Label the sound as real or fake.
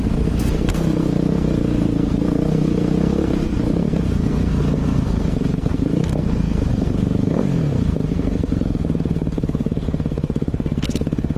fake